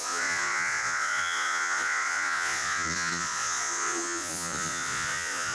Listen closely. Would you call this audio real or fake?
fake